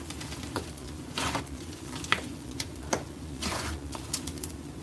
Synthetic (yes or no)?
yes